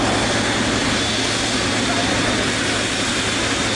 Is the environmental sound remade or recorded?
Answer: recorded